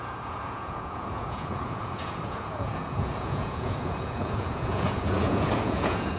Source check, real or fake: fake